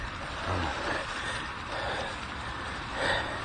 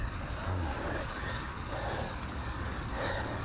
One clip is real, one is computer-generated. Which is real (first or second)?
first